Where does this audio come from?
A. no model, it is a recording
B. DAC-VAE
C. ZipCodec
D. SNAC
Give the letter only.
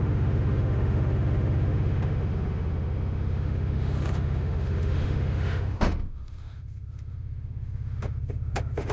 B